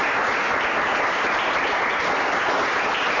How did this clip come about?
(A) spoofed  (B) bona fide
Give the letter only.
B